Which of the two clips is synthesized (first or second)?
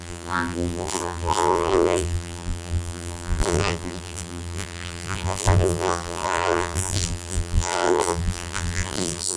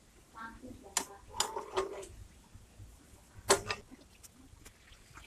first